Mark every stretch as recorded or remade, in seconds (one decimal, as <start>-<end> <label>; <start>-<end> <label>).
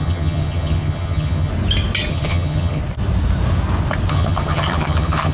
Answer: 0.0-1.5 remade; 1.5-2.1 recorded; 2.1-2.8 remade; 2.8-4.1 recorded; 4.1-5.3 remade